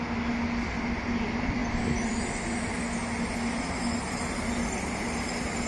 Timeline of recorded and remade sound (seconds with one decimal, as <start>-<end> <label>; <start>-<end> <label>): 0.0-5.7 recorded